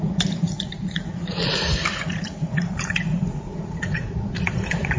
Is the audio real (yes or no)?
no